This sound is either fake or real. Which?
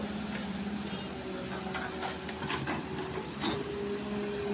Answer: real